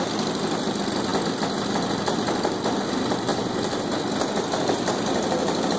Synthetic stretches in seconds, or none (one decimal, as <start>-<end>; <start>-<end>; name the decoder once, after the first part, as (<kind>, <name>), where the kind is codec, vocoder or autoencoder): none